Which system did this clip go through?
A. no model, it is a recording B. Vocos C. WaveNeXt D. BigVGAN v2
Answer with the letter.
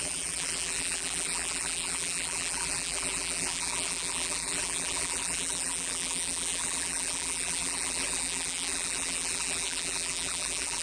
D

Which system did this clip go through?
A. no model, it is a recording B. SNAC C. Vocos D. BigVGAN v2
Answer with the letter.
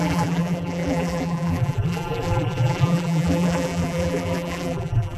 D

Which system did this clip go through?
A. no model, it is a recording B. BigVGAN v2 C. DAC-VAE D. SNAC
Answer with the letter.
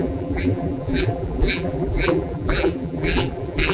B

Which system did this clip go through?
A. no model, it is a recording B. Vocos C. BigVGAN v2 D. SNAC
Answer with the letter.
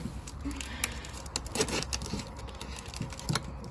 A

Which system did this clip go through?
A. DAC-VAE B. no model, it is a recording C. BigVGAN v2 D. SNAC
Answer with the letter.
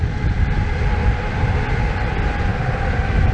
C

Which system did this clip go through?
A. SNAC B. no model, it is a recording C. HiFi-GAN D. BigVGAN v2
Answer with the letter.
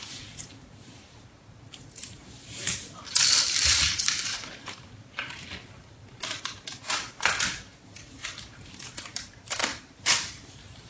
D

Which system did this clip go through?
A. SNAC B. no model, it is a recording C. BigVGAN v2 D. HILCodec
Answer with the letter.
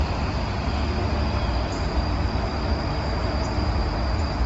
B